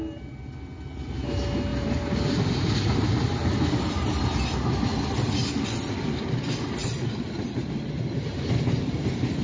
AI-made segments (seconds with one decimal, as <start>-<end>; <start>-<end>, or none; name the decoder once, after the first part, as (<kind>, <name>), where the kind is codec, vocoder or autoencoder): 1.7-3.2 (vocoder, BigVGAN v2); 6.8-8.0